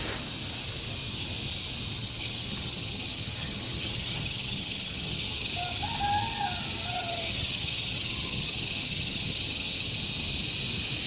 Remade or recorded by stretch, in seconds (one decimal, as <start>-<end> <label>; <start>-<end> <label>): 0.0-2.0 recorded; 2.0-5.5 remade; 5.5-6.9 recorded; 6.9-9.9 remade; 9.9-11.1 recorded